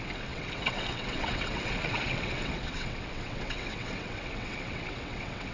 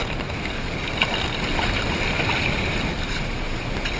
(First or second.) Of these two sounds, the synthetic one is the first